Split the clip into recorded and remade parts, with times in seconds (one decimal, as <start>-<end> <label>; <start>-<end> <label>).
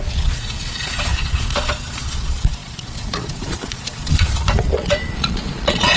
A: 0.0-6.0 remade